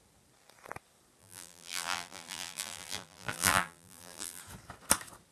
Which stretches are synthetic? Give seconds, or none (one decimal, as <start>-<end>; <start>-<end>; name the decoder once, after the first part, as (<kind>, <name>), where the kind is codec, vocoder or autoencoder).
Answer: 1.2-4.4 (vocoder, BigVGAN v2)